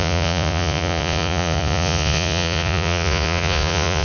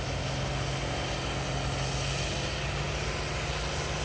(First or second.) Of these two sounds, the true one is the second